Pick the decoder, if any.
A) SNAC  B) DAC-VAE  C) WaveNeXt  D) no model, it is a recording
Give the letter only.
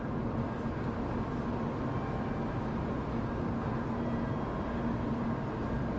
D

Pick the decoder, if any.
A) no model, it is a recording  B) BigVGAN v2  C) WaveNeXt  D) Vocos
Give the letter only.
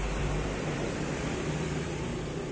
B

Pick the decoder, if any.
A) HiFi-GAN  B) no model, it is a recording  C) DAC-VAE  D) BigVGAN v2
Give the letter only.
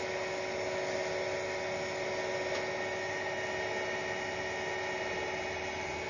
B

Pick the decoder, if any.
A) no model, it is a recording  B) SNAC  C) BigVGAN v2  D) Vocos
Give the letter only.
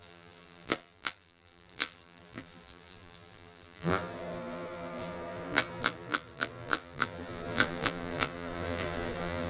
C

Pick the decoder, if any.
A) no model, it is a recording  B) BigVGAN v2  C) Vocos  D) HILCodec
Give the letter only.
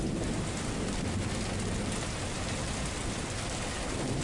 A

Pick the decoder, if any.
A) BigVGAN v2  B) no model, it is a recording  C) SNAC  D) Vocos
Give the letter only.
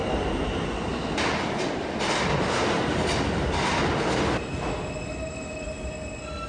B